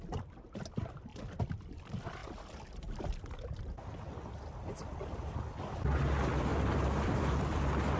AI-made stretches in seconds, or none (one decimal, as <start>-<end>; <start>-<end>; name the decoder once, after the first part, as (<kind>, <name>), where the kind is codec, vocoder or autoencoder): 1.1-1.8 (vocoder, BigVGAN v2); 6.5-7.6